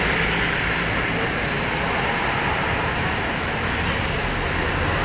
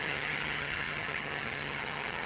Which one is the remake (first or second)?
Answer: second